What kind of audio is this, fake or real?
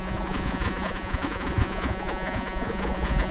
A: fake